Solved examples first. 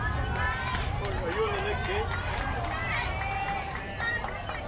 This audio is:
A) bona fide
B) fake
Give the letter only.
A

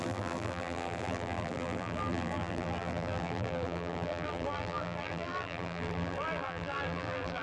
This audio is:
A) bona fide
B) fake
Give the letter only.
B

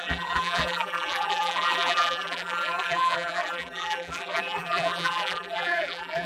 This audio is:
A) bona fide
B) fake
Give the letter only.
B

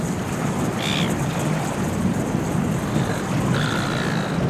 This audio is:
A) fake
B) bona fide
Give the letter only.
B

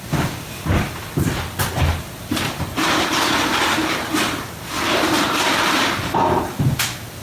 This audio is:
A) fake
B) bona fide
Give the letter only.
A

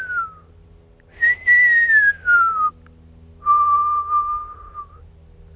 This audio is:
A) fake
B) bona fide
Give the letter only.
B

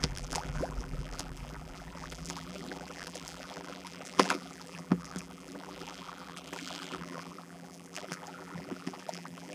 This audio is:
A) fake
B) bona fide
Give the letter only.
A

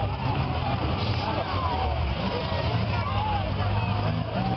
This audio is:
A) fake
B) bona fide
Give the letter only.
A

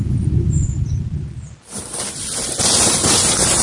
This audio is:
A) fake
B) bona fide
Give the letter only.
A